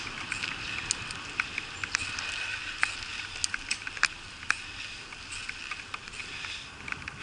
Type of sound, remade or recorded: recorded